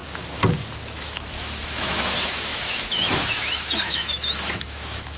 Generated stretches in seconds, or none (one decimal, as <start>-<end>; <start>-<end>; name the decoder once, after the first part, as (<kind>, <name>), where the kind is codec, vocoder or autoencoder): 0.8-5.2 (autoencoder, DAC-VAE)